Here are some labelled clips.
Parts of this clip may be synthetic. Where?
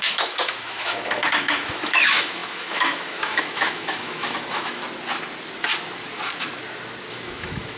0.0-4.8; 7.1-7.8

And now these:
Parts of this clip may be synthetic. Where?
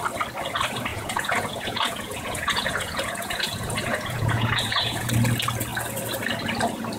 0.9-5.1